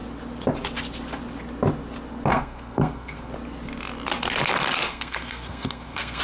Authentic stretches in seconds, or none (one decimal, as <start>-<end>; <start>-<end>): 0.0-2.3; 3.3-4.9